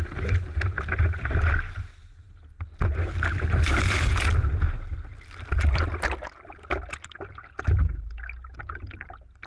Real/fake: real